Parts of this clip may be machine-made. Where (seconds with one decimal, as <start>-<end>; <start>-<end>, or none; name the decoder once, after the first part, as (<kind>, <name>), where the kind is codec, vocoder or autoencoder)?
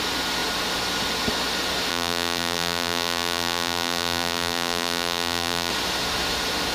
1.9-5.7 (vocoder, BigVGAN v2)